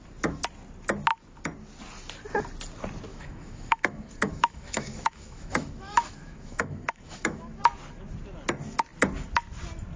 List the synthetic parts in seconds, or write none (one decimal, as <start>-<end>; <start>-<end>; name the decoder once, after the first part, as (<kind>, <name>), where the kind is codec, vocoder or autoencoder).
3.1-7.6 (autoencoder, DAC-VAE)